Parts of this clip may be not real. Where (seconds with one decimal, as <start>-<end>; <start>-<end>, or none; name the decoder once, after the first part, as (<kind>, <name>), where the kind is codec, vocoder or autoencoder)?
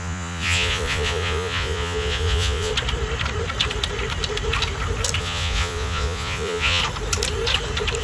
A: 0.0-2.7 (vocoder, Vocos); 5.2-6.8